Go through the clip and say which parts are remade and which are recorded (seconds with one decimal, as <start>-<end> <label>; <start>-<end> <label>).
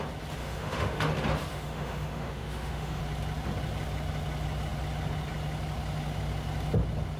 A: 0.0-0.4 recorded; 0.4-1.1 remade; 1.1-1.5 recorded; 1.5-3.0 remade; 3.0-7.2 recorded